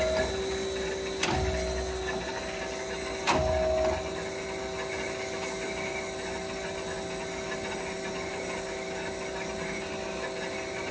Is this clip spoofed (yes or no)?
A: no